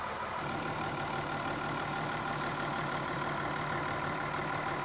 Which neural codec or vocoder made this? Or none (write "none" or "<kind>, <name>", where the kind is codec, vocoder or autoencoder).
vocoder, BigVGAN v2